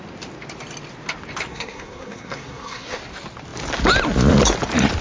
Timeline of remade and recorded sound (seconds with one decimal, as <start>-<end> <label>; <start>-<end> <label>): 0.0-1.5 recorded; 1.5-3.0 remade; 3.0-5.0 recorded